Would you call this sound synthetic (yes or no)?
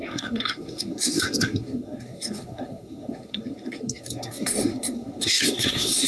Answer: yes